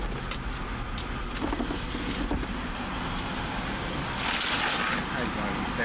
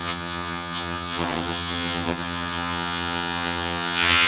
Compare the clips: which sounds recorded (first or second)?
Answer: first